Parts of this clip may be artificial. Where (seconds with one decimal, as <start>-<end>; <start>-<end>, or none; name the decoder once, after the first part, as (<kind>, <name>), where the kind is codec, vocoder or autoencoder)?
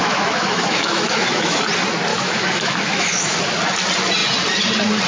0.0-1.6 (autoencoder, DAC-VAE); 2.1-3.4